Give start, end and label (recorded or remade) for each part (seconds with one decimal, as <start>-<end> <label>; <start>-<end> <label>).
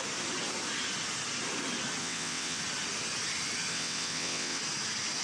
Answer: 0.0-2.0 recorded; 2.0-2.6 remade; 2.6-3.7 recorded; 3.7-4.6 remade; 4.6-5.2 recorded